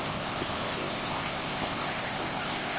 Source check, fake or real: fake